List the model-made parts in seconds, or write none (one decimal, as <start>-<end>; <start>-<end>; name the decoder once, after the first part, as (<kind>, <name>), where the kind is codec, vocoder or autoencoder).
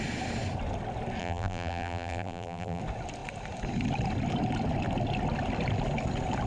1.2-2.8 (vocoder, BigVGAN v2)